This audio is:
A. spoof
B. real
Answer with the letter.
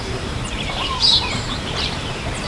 A